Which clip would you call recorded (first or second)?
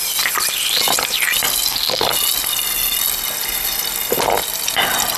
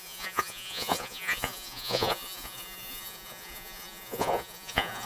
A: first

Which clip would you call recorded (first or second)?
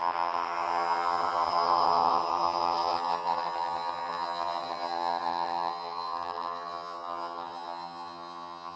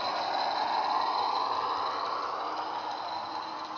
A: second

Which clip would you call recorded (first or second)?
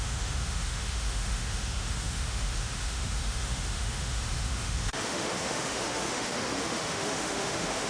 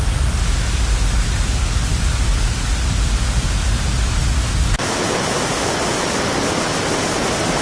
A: second